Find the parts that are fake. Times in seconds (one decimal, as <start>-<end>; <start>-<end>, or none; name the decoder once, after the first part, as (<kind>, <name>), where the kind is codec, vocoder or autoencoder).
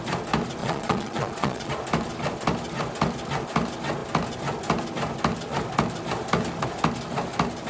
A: 0.6-1.7 (vocoder, Vocos)